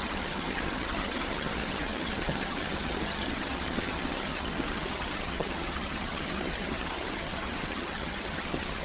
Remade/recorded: remade